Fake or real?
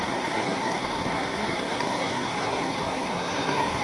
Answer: fake